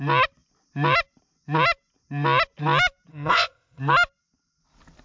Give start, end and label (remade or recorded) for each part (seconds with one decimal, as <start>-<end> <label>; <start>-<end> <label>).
0.0-3.1 recorded; 3.1-3.8 remade; 3.8-5.0 recorded